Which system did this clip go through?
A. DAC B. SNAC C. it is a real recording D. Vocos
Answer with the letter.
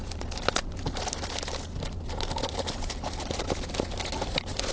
C